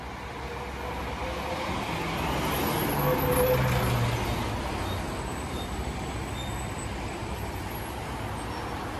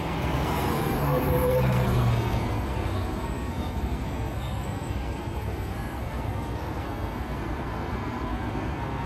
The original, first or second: first